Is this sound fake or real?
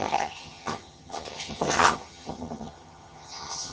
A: fake